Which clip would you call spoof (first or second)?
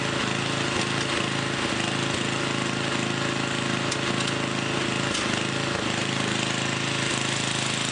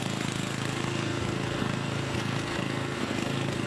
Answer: second